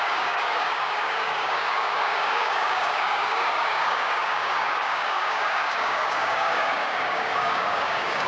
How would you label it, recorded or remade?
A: remade